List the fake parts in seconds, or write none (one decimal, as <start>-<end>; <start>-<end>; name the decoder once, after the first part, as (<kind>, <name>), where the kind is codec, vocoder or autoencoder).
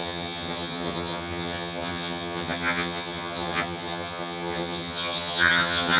0.0-6.0 (vocoder, HiFi-GAN)